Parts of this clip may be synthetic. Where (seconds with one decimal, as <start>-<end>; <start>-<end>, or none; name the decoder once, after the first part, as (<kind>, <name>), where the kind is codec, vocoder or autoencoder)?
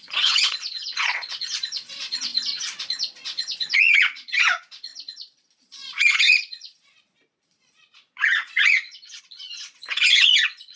0.0-2.3 (vocoder, Vocos); 2.8-10.8